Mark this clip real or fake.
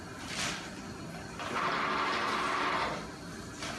real